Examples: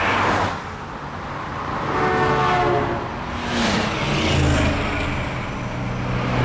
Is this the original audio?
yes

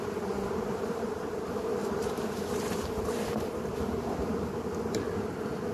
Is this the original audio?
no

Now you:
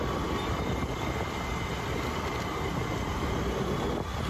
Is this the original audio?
yes